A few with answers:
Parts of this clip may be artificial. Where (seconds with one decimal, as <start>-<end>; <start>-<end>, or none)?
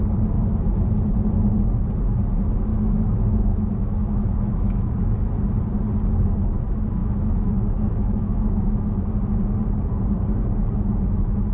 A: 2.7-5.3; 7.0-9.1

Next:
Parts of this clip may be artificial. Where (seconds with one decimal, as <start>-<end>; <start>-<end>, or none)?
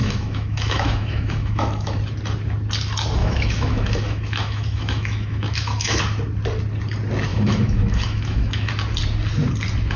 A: 0.0-2.0; 3.2-6.0; 7.3-8.7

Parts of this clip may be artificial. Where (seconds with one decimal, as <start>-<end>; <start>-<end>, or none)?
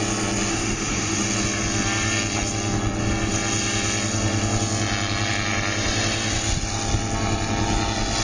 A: 0.5-1.2